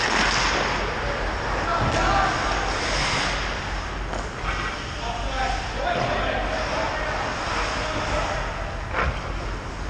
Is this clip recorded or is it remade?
recorded